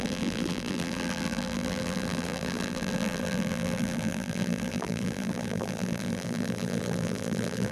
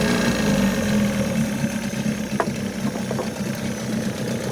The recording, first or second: second